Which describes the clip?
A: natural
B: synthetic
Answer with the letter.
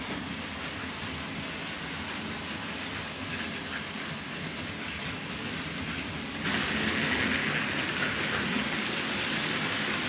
A